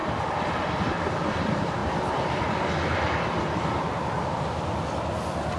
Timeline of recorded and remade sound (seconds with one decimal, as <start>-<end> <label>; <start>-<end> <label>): 0.0-5.6 recorded